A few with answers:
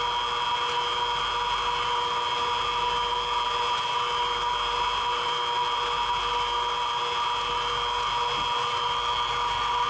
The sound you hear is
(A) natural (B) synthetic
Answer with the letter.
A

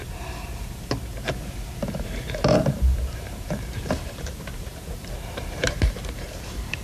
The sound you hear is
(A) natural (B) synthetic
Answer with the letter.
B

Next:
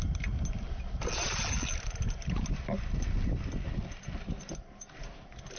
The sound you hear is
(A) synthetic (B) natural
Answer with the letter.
B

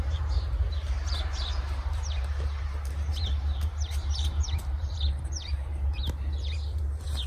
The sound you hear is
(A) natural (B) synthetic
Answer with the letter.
B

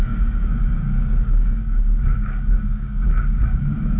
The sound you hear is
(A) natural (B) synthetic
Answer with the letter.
B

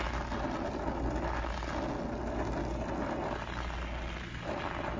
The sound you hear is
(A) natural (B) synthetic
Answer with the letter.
A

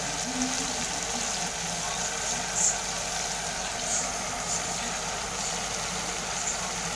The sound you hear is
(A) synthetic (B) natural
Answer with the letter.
B